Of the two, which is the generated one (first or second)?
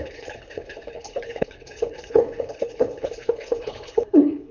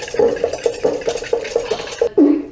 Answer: first